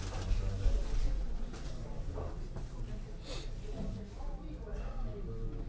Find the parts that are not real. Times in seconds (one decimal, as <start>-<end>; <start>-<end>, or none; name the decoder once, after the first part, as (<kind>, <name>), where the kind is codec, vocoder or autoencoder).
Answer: none